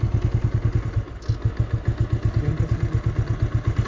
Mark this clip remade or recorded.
recorded